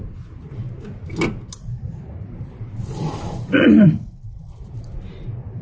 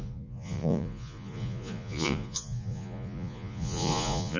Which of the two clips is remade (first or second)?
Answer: second